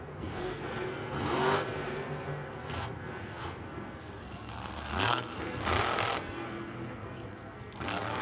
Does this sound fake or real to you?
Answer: fake